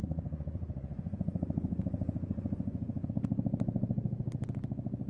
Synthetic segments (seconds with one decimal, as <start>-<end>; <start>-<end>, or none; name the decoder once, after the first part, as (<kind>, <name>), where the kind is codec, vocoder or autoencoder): 0.0-3.1 (vocoder, Vocos)

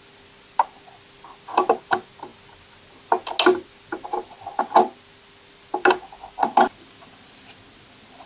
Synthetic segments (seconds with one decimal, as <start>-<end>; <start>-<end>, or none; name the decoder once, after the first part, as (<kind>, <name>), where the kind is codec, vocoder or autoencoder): none

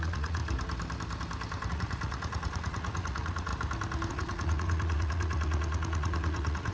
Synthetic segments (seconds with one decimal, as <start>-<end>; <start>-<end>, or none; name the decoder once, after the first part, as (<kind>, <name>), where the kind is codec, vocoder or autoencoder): 0.0-0.4 (vocoder, Vocos); 1.7-3.5; 4.1-6.7

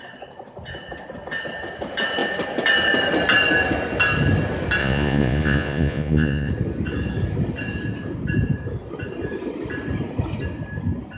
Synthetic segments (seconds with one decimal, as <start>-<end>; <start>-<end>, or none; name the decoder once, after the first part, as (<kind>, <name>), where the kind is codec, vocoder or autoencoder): 4.8-6.5 (vocoder, Vocos)

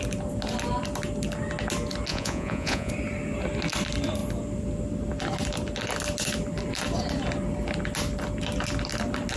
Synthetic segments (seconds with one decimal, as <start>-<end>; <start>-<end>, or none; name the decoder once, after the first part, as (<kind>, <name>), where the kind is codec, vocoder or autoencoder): 2.1-2.9 (vocoder, Vocos)

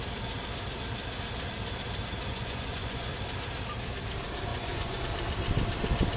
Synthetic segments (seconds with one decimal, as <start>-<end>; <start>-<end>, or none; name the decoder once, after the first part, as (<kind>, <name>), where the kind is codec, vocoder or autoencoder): 2.3-3.1 (vocoder, Vocos); 4.5-5.0

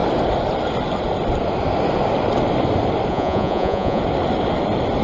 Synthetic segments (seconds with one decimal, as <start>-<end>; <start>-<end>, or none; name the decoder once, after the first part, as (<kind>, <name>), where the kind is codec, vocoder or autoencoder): 3.1-4.0 (vocoder, Vocos)

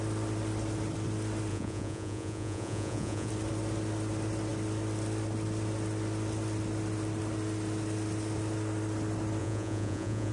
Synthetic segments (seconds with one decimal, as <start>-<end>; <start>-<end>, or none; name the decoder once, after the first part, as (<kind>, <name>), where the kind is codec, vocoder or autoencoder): 1.5-3.3 (vocoder, Vocos); 9.4-10.3